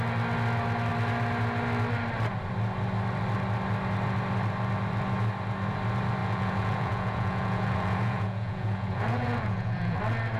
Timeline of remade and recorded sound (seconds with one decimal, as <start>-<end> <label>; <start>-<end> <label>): 0.0-6.2 recorded; 6.2-10.0 remade; 10.0-10.4 recorded

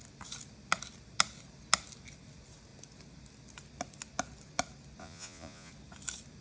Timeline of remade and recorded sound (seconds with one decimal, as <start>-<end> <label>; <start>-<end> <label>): 0.0-5.0 recorded; 5.0-5.7 remade; 5.7-6.4 recorded